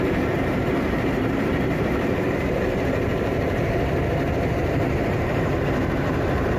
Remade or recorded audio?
remade